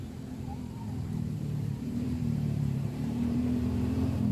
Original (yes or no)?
no